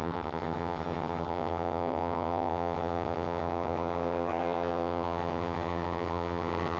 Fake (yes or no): yes